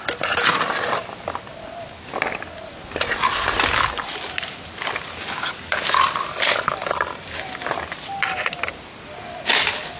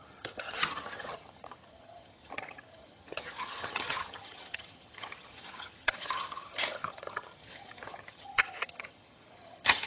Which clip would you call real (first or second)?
first